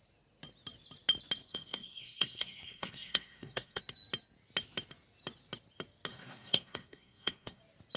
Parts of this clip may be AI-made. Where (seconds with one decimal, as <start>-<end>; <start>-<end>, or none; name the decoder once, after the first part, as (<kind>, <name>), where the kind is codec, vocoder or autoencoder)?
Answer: 1.5-3.8 (codec, SNAC); 6.1-7.6